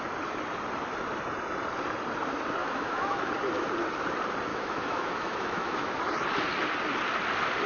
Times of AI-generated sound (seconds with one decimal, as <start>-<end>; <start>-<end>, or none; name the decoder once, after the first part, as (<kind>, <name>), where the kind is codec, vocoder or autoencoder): 2.6-3.3 (autoencoder, DAC-VAE); 4.5-6.0